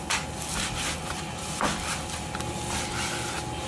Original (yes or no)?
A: yes